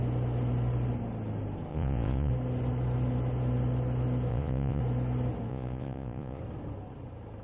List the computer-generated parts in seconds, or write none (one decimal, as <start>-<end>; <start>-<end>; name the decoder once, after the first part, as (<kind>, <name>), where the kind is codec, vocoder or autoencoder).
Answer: 1.7-2.3 (vocoder, Vocos); 4.3-4.8; 5.5-6.4